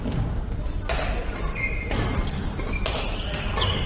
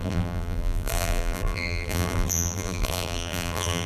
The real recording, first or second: first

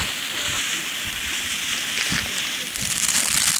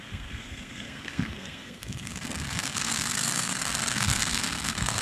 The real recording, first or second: first